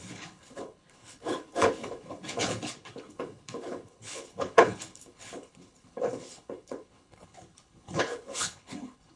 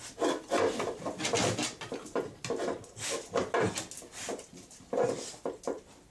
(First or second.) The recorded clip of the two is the second